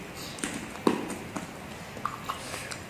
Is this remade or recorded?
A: recorded